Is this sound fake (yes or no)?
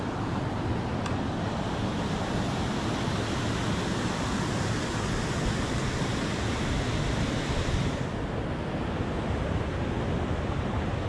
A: no